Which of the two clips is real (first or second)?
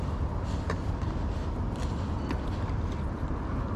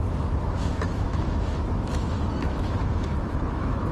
first